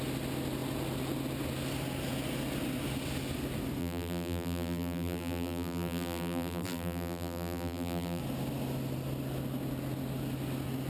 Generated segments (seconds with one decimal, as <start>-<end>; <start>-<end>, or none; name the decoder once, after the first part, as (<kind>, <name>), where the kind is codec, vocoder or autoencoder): 3.8-8.2 (vocoder, BigVGAN v2)